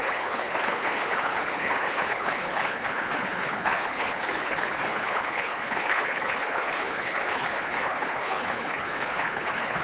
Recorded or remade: remade